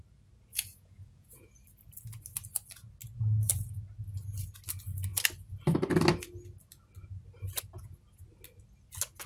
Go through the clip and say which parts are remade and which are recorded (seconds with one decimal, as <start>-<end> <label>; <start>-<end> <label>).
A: 0.0-0.5 recorded; 0.5-1.5 remade; 1.5-9.3 recorded